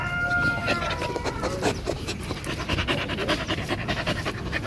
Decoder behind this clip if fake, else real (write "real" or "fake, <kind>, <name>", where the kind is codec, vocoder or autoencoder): real